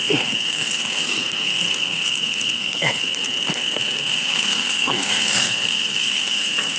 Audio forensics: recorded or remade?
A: remade